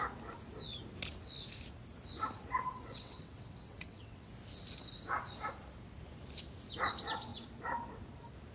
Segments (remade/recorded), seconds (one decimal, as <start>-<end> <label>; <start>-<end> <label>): 0.0-2.7 recorded; 2.7-4.3 remade; 4.3-8.5 recorded